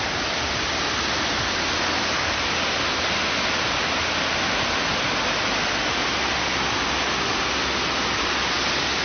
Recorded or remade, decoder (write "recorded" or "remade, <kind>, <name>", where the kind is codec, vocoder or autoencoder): recorded